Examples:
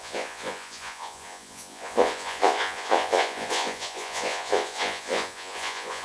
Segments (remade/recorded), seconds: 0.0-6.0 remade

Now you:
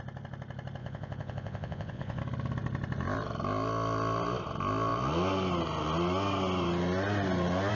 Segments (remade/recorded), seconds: 0.0-0.8 recorded; 0.8-2.2 remade; 2.2-7.7 recorded

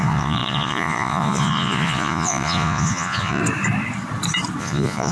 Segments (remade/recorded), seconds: 0.0-3.4 remade; 3.4-4.6 recorded; 4.6-5.1 remade

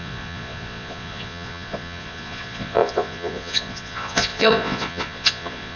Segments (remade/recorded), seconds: 0.0-5.8 remade

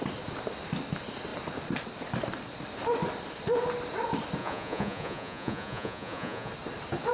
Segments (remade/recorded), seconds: 0.0-4.4 recorded; 4.4-6.5 remade; 6.5-7.1 recorded